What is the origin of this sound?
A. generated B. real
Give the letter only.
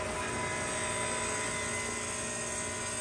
B